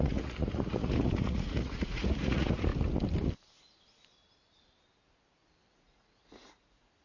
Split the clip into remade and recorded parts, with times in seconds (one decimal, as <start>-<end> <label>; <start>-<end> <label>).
0.0-2.7 remade; 2.7-5.7 recorded; 5.7-7.0 remade